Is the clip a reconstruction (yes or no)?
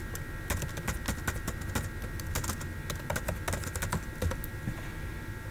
no